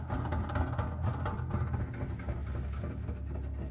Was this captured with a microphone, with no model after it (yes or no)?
yes